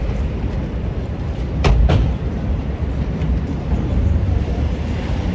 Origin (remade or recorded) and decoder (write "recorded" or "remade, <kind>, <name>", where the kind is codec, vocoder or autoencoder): remade, vocoder, BigVGAN v2